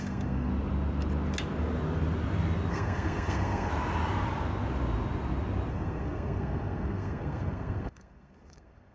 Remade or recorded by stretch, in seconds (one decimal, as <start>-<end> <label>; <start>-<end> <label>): 0.0-0.5 remade; 0.5-2.7 recorded; 2.7-3.7 remade; 3.7-5.7 recorded; 5.7-8.9 remade